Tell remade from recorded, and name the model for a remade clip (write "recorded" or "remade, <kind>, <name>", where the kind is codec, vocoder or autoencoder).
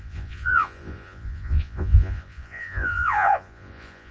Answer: remade, vocoder, Vocos